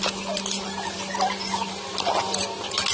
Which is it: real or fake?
real